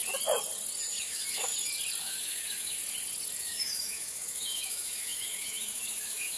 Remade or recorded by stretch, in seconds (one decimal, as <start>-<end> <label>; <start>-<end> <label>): 0.0-1.0 recorded; 1.0-1.5 remade; 1.5-2.0 recorded; 2.0-2.8 remade; 2.8-3.4 recorded; 3.4-6.4 remade